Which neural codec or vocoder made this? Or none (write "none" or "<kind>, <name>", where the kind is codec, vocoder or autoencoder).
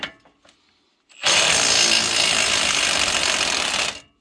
none